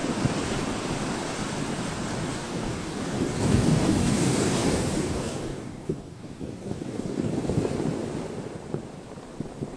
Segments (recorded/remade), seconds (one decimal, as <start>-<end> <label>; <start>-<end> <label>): 0.0-2.3 recorded; 2.3-7.3 remade; 7.3-9.8 recorded